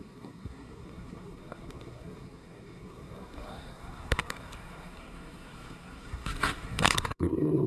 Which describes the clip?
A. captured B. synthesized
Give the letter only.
B